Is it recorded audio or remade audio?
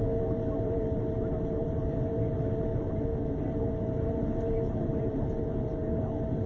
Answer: remade